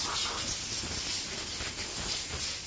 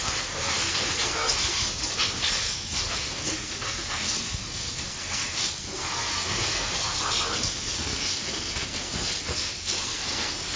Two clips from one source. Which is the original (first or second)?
first